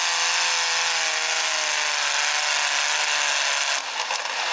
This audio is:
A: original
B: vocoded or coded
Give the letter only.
A